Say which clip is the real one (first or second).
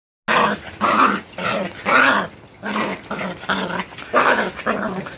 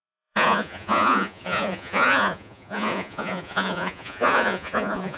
first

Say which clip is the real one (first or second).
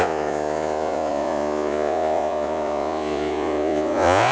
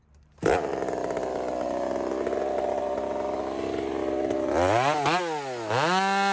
second